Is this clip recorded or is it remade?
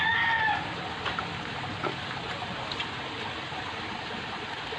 recorded